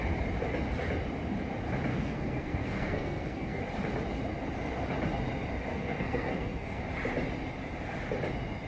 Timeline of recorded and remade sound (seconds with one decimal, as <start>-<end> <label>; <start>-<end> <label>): 0.0-1.9 recorded; 1.9-3.6 remade; 3.6-5.7 recorded; 5.7-6.8 remade; 6.8-8.7 recorded